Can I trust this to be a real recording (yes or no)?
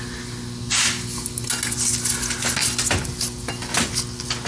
yes